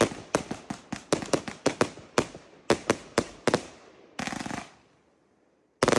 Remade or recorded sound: recorded